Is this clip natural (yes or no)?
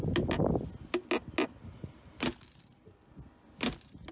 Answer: yes